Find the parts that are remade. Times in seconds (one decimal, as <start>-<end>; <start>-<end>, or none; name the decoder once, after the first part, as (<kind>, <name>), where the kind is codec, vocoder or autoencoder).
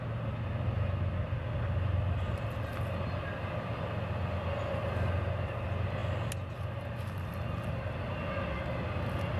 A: none